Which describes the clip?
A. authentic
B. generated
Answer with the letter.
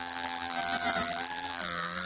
B